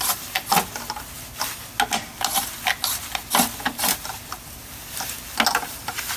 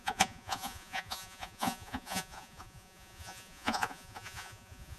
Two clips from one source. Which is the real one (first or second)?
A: first